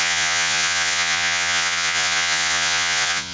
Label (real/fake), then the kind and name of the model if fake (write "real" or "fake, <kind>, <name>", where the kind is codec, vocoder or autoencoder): fake, vocoder, Vocos